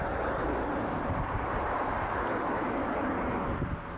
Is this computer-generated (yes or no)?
no